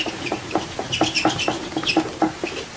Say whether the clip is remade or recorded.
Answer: recorded